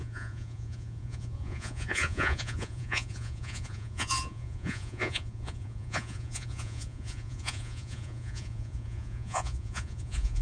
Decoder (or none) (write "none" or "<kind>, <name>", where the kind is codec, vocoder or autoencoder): vocoder, Vocos